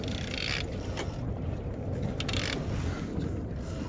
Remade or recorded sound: recorded